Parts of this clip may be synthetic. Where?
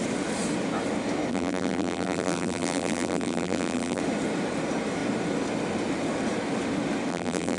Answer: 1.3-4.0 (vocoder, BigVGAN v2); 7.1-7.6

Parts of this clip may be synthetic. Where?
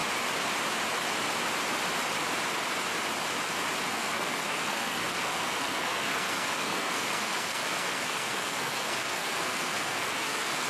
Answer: 3.9-10.7 (codec, SNAC)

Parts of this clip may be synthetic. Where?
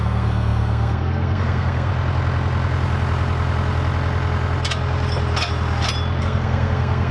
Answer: 0.0-1.9 (codec, SNAC); 6.2-7.1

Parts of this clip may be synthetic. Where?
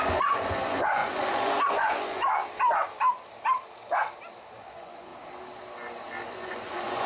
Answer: 0.0-2.4 (vocoder, Vocos); 4.6-5.1; 6.3-7.1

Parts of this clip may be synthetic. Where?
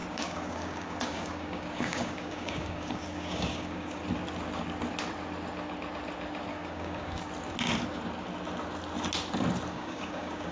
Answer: 0.0-4.0 (codec, DAC); 6.5-7.3; 9.7-10.5